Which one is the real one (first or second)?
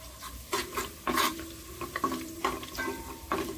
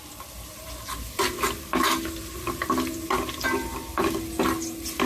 second